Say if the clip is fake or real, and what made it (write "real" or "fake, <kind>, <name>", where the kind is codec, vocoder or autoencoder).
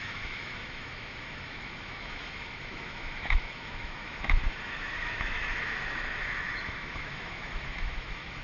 fake, autoencoder, DAC-VAE